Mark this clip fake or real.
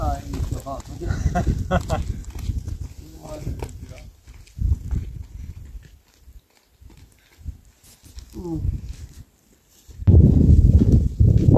real